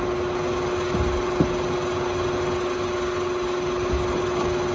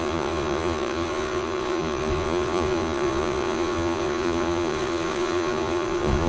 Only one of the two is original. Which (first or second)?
first